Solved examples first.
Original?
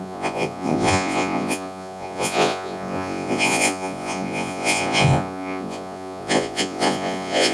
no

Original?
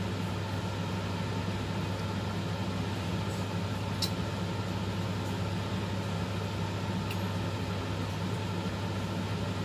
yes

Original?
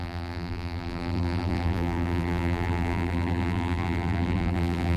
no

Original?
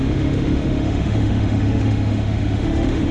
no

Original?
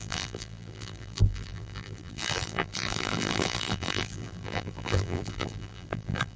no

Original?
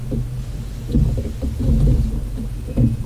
yes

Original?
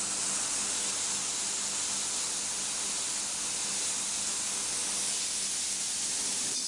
yes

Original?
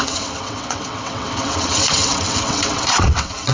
no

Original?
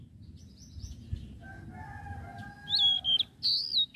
yes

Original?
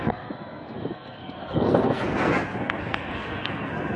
no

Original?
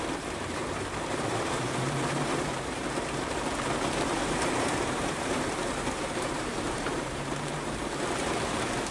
no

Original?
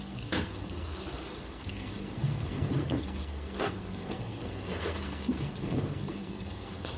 no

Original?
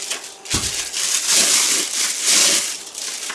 yes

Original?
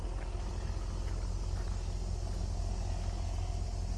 yes